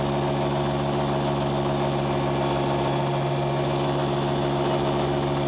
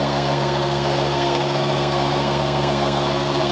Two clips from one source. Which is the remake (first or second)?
second